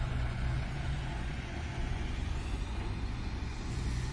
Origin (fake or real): fake